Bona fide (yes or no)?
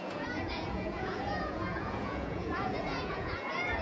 no